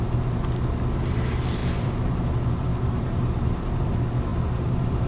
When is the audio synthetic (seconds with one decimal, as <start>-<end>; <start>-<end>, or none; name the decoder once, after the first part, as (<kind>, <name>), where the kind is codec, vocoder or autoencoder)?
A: 1.6-2.3 (vocoder, BigVGAN v2); 2.7-3.9; 4.3-5.1